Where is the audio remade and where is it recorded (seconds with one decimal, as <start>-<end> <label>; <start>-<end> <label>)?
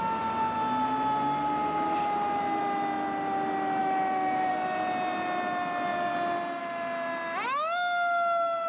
0.0-3.8 recorded; 3.8-4.5 remade; 4.5-8.7 recorded